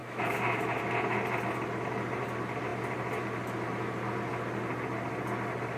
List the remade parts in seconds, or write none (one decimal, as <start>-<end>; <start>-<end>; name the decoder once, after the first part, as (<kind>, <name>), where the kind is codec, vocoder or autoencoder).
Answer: 0.0-0.8 (autoencoder, DAC-VAE)